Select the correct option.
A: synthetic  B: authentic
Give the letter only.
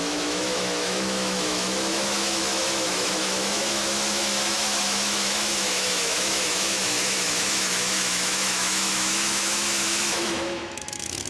A